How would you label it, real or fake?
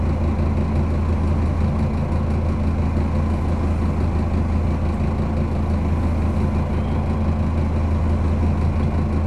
real